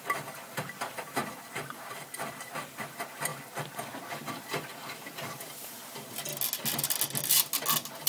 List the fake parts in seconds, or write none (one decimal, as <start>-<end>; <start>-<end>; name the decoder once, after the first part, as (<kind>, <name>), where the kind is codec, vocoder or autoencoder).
0.0-3.3 (vocoder, BigVGAN v2); 4.3-6.3